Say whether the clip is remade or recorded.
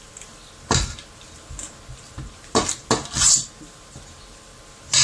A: recorded